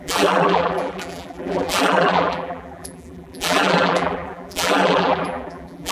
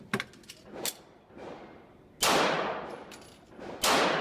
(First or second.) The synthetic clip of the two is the first